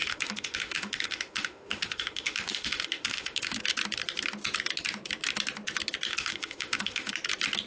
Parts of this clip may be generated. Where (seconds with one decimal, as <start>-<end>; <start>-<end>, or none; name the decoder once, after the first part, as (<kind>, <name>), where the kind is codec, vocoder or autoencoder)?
0.0-3.6 (autoencoder, DAC-VAE); 6.1-7.1